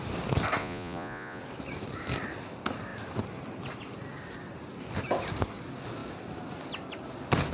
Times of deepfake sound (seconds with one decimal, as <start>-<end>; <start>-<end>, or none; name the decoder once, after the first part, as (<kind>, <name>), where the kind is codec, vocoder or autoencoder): 0.6-1.4 (vocoder, Vocos)